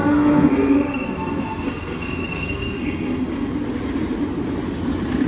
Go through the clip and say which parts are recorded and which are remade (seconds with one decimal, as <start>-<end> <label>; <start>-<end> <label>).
0.0-3.2 remade; 3.2-5.3 recorded